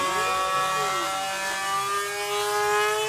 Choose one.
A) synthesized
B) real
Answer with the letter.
B